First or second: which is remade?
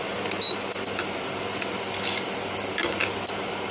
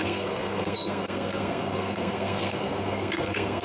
second